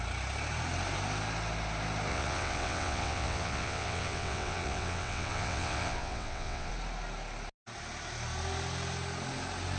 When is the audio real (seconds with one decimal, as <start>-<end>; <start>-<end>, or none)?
0.0-2.1; 6.7-9.8